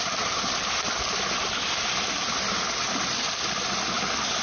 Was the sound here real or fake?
real